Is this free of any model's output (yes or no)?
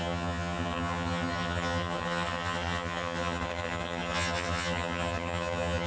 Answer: no